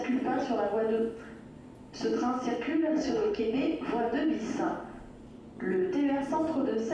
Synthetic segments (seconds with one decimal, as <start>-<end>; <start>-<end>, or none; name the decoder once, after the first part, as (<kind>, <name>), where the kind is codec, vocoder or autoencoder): 2.9-3.4 (codec, SNAC)